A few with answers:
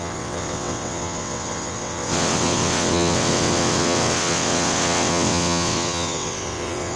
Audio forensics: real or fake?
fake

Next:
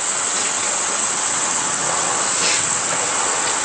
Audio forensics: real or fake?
fake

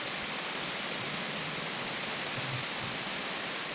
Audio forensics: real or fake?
real